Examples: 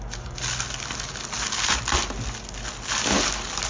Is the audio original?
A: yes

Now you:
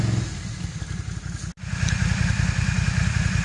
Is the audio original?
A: yes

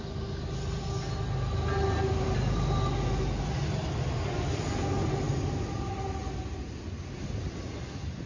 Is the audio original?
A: yes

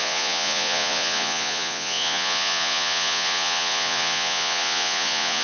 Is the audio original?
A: no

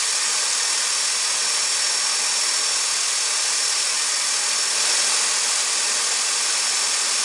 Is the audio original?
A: yes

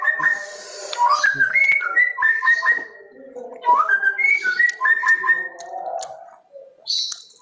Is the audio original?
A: yes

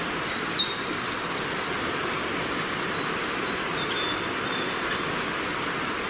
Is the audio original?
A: yes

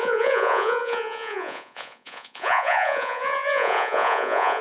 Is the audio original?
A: no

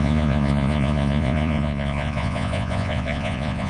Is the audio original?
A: no